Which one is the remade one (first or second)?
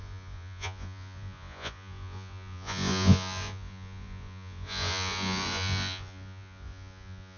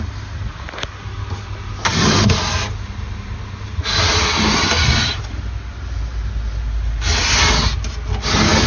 first